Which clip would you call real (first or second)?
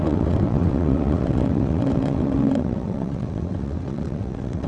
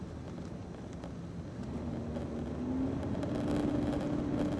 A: second